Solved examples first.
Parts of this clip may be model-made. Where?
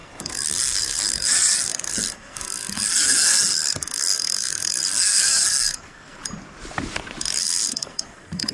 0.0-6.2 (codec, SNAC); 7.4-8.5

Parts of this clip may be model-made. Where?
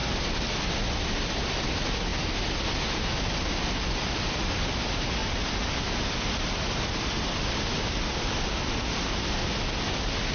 0.0-1.6 (vocoder, BigVGAN v2); 5.2-9.0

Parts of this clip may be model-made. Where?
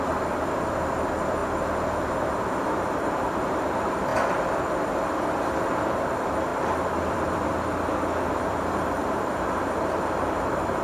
0.0-1.4 (vocoder, BigVGAN v2); 2.6-4.1; 4.8-10.8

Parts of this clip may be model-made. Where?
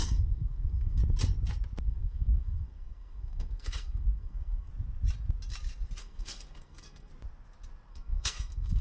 0.0-1.0 (codec, SNAC); 1.8-4.7; 6.0-7.1; 7.9-8.8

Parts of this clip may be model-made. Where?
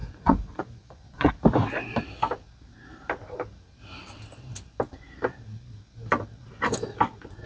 0.0-1.3 (vocoder, Vocos)